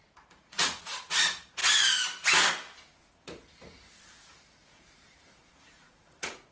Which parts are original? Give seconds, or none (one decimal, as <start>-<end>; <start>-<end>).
1.6-3.2